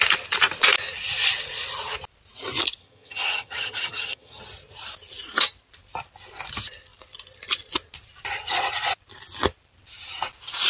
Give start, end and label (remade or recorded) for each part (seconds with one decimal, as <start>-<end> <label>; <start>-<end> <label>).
0.0-2.8 recorded; 2.8-4.4 remade; 4.4-10.7 recorded